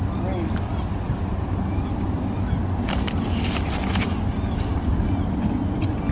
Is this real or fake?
real